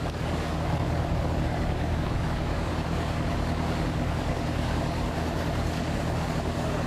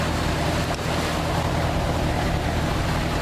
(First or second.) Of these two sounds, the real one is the second